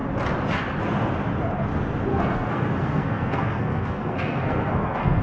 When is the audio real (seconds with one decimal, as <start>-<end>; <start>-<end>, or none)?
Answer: 0.0-2.1